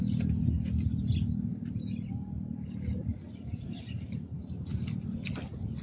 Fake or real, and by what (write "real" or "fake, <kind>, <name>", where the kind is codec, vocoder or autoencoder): real